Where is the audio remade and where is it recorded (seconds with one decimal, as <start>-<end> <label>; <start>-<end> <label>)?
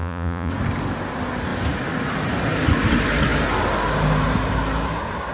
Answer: 0.0-0.5 remade; 0.5-5.3 recorded